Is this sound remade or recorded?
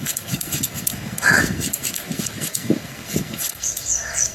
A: remade